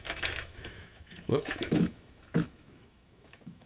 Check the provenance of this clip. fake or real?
fake